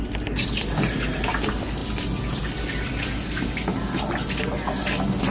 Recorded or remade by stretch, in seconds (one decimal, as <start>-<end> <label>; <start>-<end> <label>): 0.0-5.3 recorded